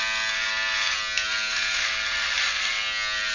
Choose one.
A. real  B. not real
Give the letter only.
A